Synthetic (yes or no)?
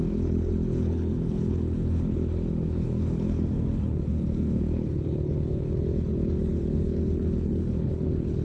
yes